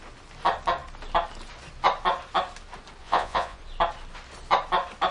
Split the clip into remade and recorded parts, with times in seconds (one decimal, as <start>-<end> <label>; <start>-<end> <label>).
0.0-3.0 recorded; 3.0-3.6 remade; 3.6-5.1 recorded